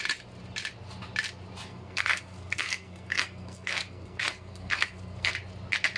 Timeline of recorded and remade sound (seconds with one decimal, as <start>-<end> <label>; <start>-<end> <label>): 0.0-1.7 recorded; 1.7-5.3 remade; 5.3-6.0 recorded